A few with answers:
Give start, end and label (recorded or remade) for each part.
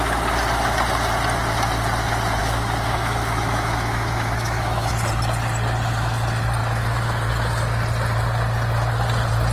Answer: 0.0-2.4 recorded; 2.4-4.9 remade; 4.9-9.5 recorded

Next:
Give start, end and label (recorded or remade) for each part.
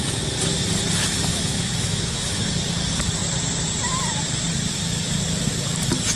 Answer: 0.0-1.3 recorded; 1.3-2.4 remade; 2.4-6.2 recorded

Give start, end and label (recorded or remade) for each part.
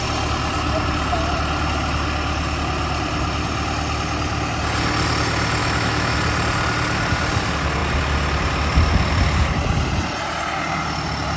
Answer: 0.0-5.6 recorded; 5.6-6.2 remade; 6.2-11.4 recorded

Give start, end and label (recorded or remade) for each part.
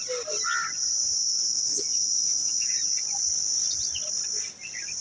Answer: 0.0-1.5 recorded; 1.5-2.7 remade; 2.7-5.0 recorded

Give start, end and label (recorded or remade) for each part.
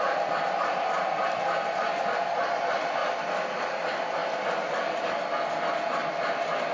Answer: 0.0-6.7 recorded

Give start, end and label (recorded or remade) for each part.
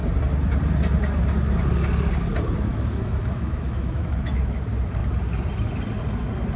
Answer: 0.0-2.7 recorded; 2.7-4.6 remade; 4.6-6.6 recorded